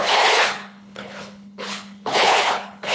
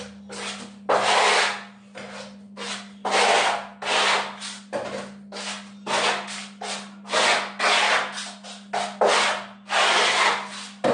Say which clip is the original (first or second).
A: second